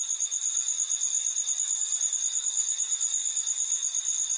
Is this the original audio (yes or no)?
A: yes